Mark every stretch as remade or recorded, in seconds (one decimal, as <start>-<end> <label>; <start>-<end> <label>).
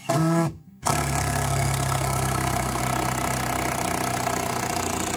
0.0-2.8 remade; 2.8-5.2 recorded